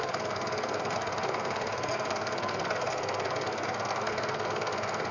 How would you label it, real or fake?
fake